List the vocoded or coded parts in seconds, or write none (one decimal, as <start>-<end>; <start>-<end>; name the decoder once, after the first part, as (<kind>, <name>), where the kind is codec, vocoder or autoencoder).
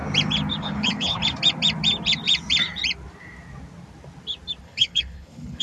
0.6-1.2 (codec, HILCodec); 4.6-5.6